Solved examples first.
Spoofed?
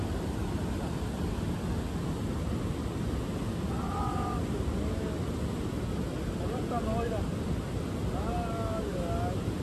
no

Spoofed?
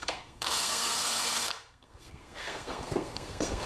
yes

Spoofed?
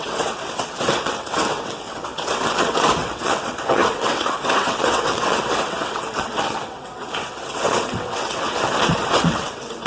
yes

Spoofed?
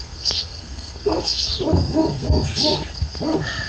yes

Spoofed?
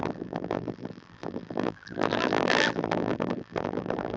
yes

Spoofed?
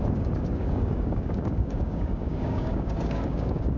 yes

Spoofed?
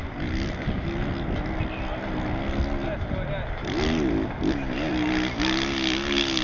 no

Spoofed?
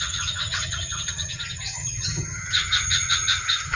yes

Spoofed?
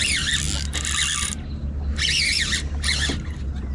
no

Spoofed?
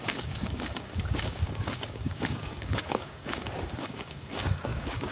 yes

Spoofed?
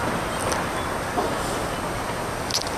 no